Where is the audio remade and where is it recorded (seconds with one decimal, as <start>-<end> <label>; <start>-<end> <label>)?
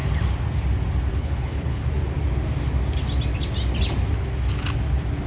0.0-1.1 recorded; 1.1-1.8 remade; 1.8-5.3 recorded